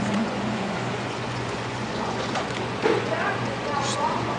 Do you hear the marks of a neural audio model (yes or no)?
yes